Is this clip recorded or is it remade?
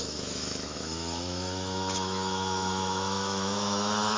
remade